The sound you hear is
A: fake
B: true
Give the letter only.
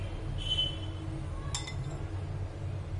B